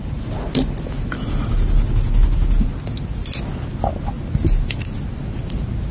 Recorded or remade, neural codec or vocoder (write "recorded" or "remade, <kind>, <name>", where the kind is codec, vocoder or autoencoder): recorded